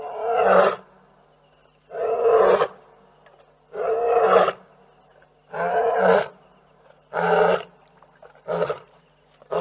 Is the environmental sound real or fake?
real